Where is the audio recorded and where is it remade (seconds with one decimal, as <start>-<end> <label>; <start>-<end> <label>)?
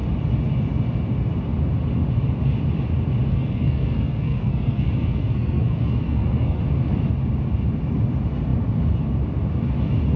0.0-3.3 recorded; 3.3-6.6 remade; 6.6-10.2 recorded